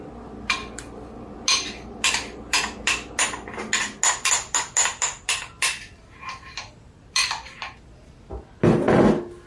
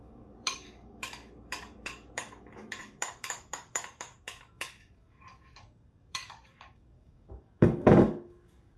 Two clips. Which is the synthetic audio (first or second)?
second